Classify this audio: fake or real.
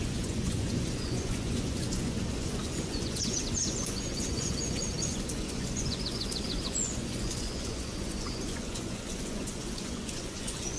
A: fake